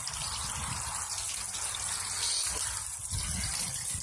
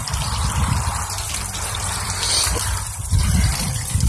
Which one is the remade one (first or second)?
second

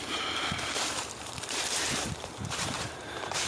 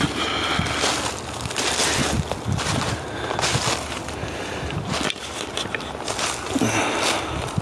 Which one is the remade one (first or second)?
first